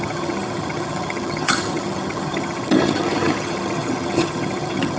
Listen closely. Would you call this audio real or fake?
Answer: fake